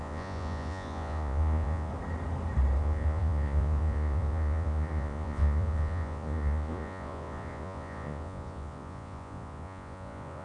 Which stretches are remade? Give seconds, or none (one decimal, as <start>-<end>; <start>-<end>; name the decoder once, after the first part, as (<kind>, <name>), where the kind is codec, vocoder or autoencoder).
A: 0.0-1.9 (vocoder, Vocos); 2.8-10.4